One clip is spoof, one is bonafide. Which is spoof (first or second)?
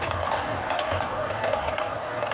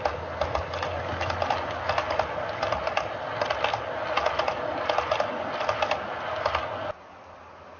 first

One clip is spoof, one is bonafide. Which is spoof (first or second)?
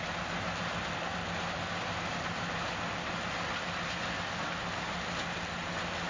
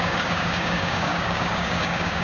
second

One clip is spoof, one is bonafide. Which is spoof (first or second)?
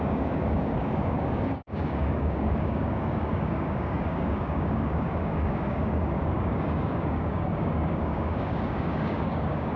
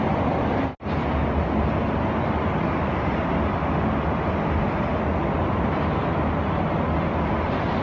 first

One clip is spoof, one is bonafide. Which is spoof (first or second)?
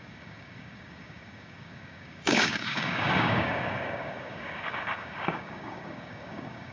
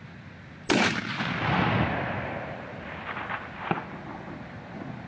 first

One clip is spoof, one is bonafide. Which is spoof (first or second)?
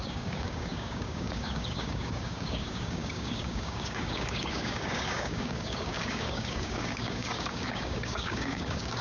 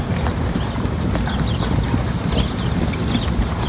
first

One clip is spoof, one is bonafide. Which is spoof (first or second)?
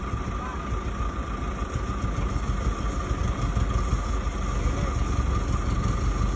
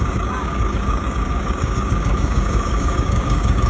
second